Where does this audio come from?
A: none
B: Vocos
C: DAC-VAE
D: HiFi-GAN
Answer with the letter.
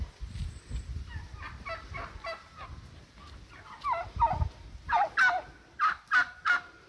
A